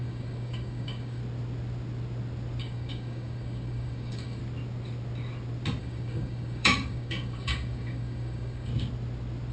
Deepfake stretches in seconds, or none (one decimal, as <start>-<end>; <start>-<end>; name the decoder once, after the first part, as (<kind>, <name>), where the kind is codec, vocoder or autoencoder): 0.0-1.2 (codec, DAC); 2.6-4.4; 5.8-8.7